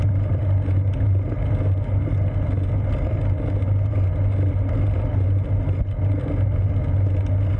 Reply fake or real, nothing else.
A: real